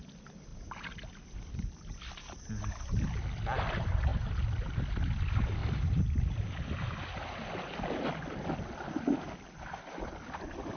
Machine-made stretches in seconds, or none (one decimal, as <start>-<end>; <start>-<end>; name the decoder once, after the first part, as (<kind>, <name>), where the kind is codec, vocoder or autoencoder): none

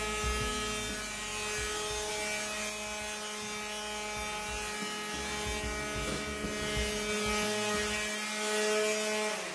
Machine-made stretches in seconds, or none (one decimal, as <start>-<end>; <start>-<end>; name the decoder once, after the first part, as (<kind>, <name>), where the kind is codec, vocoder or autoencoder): none

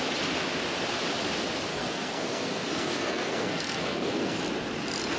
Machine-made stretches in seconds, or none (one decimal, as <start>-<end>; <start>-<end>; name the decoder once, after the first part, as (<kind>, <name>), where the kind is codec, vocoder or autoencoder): 1.7-4.4 (codec, SNAC)

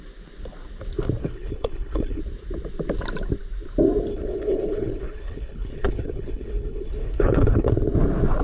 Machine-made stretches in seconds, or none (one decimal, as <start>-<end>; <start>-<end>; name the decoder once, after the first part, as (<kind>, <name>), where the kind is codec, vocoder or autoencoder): 1.2-2.2 (codec, HILCodec); 4.1-7.7

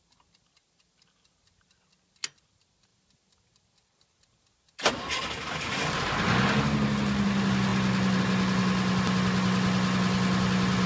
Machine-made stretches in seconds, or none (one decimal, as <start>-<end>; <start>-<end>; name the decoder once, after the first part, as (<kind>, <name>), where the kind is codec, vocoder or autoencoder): none

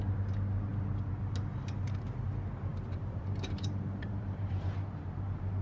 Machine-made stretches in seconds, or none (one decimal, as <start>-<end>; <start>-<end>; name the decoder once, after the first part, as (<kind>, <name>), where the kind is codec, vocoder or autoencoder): 2.7-4.5 (vocoder, BigVGAN v2)

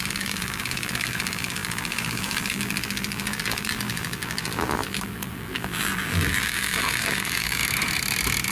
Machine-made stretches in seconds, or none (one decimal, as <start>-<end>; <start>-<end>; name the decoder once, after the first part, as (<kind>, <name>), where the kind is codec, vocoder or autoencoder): 0.0-7.6 (vocoder, BigVGAN v2)

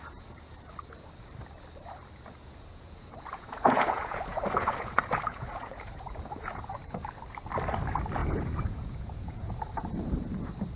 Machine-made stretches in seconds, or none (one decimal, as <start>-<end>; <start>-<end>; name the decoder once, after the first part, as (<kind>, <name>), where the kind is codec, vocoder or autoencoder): 2.4-6.7 (vocoder, Vocos); 8.2-9.5